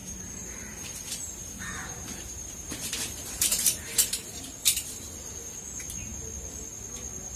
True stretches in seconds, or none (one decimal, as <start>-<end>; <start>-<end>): 4.4-7.4